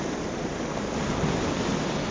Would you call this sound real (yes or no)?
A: yes